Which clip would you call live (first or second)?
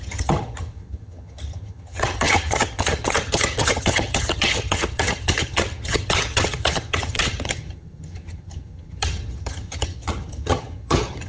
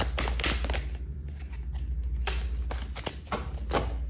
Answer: second